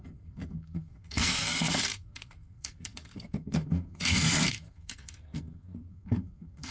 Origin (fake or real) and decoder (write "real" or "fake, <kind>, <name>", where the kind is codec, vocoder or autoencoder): fake, codec, SNAC